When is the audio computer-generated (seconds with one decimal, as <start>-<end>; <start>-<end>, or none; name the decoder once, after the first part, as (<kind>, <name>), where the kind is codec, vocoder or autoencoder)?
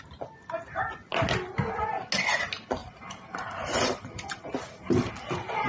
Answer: 2.8-5.1 (vocoder, BigVGAN v2)